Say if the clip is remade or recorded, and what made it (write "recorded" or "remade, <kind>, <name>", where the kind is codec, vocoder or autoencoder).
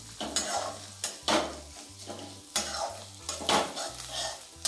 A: recorded